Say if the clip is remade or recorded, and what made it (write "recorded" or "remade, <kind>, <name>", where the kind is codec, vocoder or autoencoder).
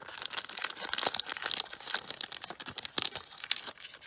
recorded